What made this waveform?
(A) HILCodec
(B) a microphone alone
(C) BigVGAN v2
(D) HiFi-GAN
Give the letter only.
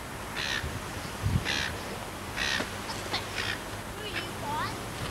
B